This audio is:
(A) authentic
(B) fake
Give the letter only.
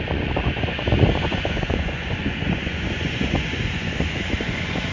B